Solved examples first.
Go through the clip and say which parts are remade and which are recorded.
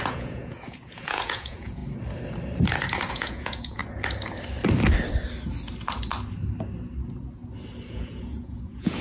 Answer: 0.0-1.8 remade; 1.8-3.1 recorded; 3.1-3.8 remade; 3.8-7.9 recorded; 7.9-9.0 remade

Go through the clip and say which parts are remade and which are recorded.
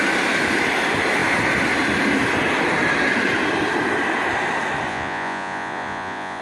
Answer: 0.0-4.9 recorded; 4.9-6.4 remade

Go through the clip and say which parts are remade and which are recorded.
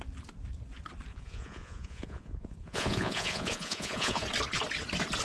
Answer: 0.0-1.1 recorded; 1.1-4.2 remade; 4.2-5.2 recorded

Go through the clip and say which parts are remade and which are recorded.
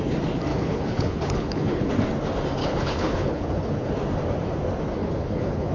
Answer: 0.0-0.5 recorded; 0.5-1.9 remade; 1.9-2.6 recorded; 2.6-3.9 remade; 3.9-5.0 recorded; 5.0-5.7 remade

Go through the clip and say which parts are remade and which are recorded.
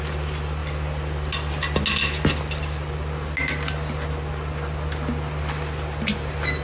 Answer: 0.0-6.6 recorded